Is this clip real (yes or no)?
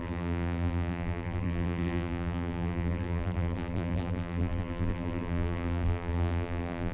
no